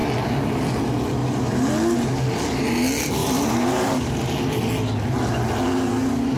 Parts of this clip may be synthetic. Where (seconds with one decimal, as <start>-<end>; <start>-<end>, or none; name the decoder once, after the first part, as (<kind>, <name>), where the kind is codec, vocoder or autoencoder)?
3.2-3.9 (vocoder, BigVGAN v2)